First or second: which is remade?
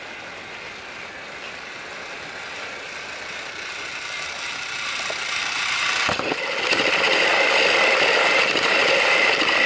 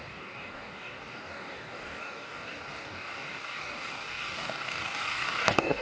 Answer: second